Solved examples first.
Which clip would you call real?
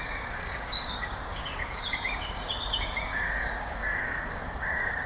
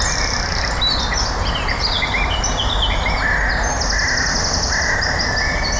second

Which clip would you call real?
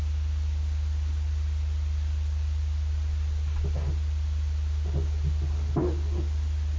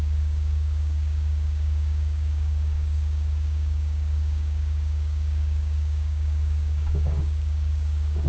first